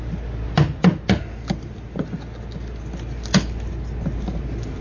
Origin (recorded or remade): recorded